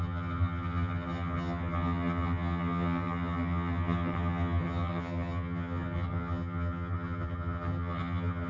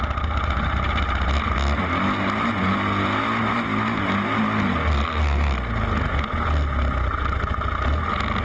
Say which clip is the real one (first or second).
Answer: second